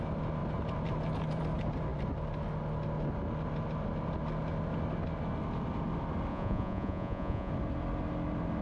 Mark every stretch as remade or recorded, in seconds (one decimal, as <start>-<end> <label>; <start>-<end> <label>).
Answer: 0.0-6.3 recorded; 6.3-7.5 remade; 7.5-8.6 recorded